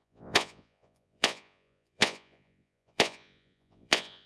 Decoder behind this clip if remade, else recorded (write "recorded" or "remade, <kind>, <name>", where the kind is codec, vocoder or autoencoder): remade, vocoder, Vocos